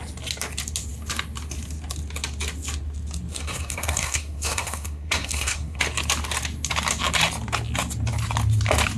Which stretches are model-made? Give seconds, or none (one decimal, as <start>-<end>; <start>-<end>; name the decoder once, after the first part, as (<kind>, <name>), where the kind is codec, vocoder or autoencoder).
3.3-5.8 (codec, SNAC)